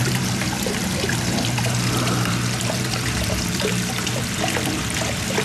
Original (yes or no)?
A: no